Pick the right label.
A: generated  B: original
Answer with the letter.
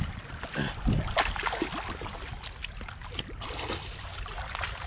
B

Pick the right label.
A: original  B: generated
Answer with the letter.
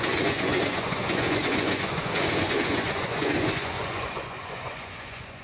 B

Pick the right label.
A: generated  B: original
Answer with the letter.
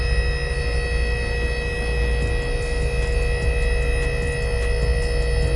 B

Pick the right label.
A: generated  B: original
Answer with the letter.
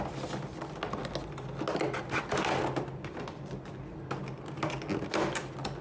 B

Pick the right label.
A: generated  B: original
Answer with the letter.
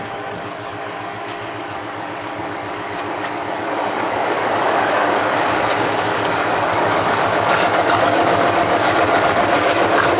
A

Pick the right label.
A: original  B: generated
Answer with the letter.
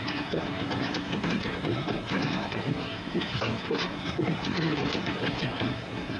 B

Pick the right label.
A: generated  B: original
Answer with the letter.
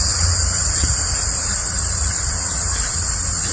A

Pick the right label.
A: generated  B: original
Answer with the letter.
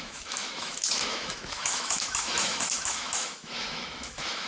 A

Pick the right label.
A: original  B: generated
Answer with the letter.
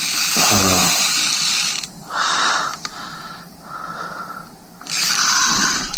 B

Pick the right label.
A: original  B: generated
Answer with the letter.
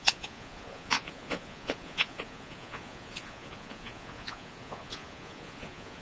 B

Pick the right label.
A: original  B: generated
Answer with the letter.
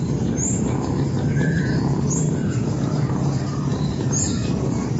B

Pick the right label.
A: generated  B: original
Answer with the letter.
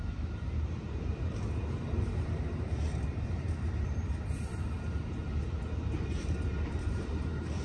A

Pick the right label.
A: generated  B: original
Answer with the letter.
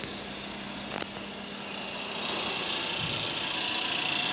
B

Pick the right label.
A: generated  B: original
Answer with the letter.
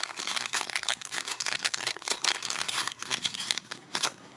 A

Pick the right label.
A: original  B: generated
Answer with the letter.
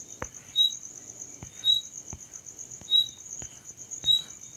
A